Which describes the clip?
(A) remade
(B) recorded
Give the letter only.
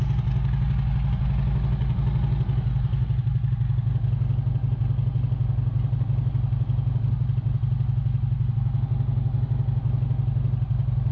B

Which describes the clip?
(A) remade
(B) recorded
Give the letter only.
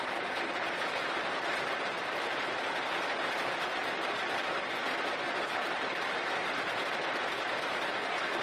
B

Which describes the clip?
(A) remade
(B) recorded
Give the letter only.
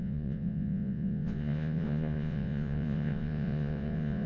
A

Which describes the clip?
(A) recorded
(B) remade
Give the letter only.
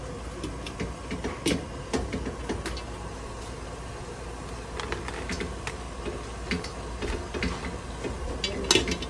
A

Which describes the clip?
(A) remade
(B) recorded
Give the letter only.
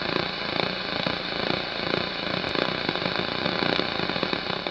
A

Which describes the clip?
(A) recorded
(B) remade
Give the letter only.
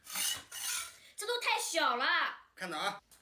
A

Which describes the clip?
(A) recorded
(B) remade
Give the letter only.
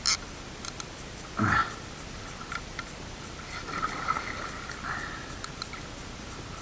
A